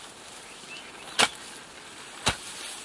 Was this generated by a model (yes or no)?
no